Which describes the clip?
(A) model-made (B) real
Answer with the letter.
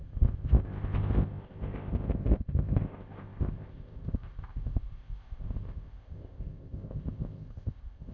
A